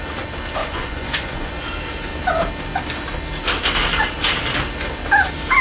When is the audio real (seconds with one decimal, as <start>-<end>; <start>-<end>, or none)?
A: 0.0-0.6; 1.5-5.6